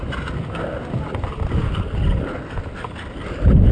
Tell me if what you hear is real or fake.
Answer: real